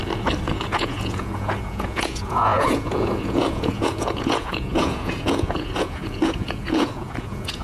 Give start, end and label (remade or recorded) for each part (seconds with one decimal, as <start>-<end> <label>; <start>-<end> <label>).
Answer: 0.0-0.5 recorded; 0.5-7.6 remade